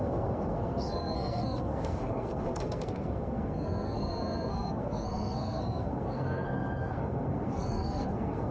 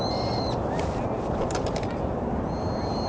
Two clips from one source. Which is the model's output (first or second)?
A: first